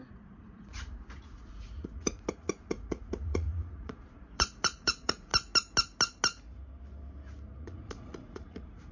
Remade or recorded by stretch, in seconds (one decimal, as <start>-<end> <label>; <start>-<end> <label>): 0.0-5.3 remade; 5.3-7.5 recorded; 7.5-8.9 remade